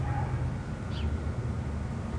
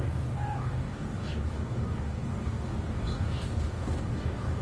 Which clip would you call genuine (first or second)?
first